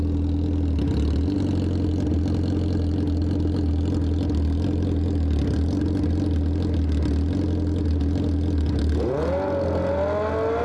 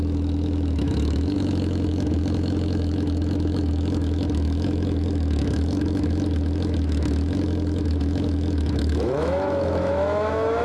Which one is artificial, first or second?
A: second